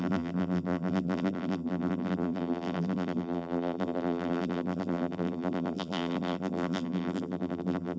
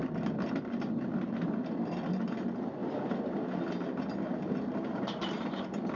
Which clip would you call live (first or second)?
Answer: second